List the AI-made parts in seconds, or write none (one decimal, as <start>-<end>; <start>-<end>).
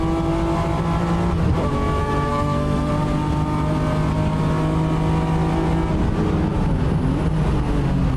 2.0-2.9